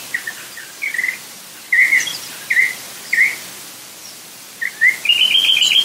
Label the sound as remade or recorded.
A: recorded